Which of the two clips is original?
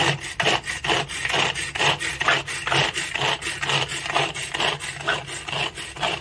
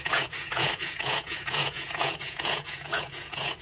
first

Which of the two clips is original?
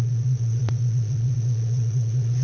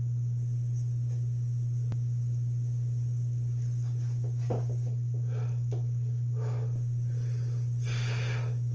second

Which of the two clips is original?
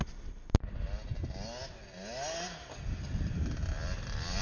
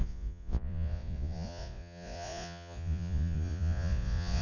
first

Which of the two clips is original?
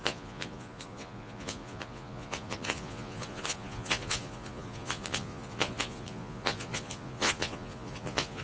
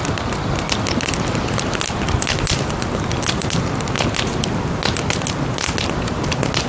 second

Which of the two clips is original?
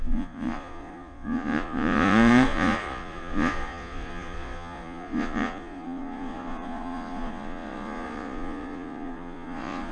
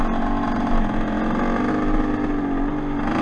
second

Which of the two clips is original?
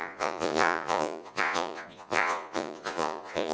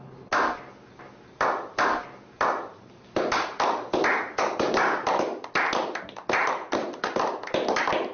second